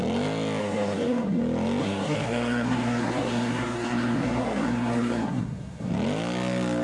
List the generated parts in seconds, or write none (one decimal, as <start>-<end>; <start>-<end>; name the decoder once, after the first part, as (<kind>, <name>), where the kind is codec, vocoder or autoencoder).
0.6-1.4 (codec, SNAC); 1.8-5.9